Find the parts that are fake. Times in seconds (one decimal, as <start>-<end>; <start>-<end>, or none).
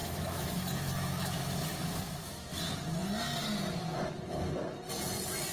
0.0-2.6